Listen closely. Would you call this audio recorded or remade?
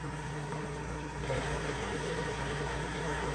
remade